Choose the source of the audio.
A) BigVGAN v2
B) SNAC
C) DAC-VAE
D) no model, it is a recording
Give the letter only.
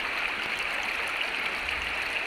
D